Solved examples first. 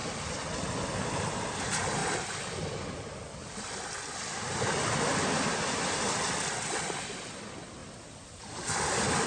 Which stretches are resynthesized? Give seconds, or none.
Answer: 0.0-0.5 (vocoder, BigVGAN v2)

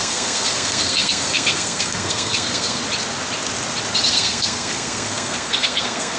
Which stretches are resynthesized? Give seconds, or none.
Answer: 0.0-2.8 (codec, SNAC); 4.1-6.2

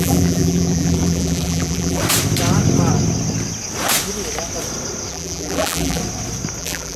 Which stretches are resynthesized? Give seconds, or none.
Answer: 0.0-2.0 (vocoder, BigVGAN v2); 5.1-6.0; 6.6-7.0

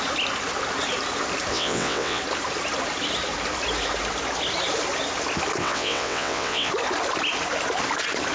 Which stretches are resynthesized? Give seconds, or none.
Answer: 1.5-2.2 (vocoder, WaveNeXt); 5.6-6.7

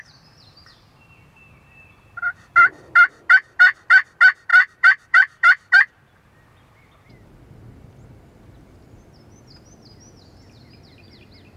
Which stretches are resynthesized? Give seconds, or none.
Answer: 4.5-8.9 (vocoder, BigVGAN v2)

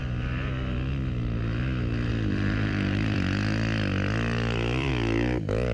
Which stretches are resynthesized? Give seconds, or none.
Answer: 2.1-4.9 (vocoder, BigVGAN v2)

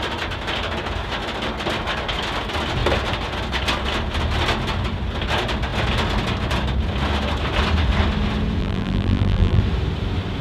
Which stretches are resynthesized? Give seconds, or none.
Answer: 8.6-9.6 (vocoder, BigVGAN v2)